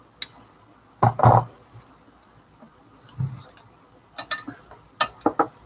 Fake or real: real